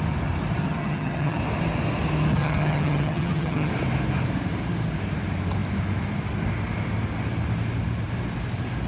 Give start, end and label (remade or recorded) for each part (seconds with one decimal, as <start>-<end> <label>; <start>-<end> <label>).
0.0-0.6 recorded; 0.6-1.4 remade; 1.4-2.4 recorded; 2.4-3.7 remade; 3.7-8.9 recorded